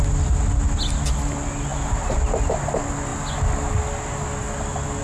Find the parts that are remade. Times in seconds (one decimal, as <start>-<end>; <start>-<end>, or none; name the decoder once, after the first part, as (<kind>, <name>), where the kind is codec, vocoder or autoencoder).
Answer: none